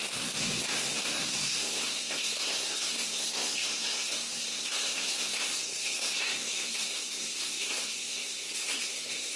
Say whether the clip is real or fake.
fake